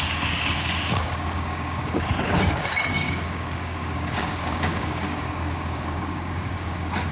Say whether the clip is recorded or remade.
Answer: remade